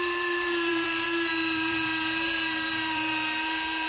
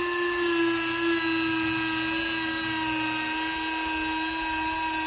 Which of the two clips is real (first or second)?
second